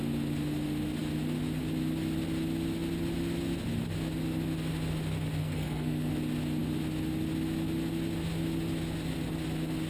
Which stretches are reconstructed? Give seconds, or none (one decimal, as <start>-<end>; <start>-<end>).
5.4-6.1